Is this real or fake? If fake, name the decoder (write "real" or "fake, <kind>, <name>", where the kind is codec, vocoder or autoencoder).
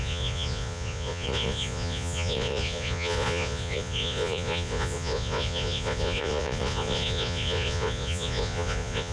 fake, vocoder, Vocos